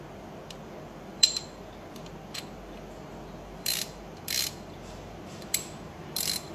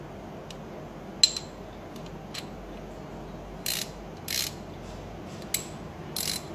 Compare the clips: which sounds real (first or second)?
second